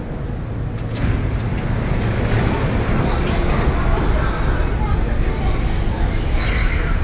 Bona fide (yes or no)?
yes